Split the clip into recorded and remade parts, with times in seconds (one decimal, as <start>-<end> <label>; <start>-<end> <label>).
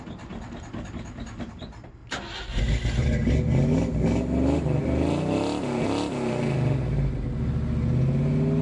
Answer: 0.0-8.6 recorded